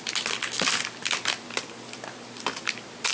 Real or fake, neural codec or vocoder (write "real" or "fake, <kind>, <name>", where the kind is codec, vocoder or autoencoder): real